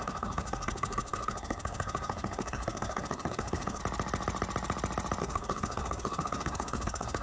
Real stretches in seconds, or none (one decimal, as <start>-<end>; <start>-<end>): 3.8-5.2